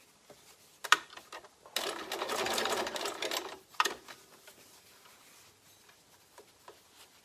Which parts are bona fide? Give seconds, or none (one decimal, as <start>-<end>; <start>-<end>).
0.0-7.2